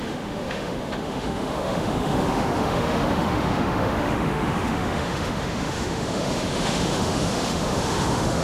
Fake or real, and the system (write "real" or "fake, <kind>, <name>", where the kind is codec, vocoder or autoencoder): fake, autoencoder, DAC-VAE